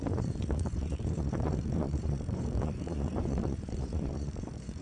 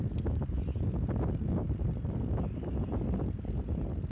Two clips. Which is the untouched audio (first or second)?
second